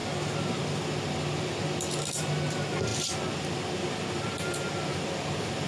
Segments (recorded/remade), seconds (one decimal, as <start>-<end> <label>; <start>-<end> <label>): 0.0-5.7 recorded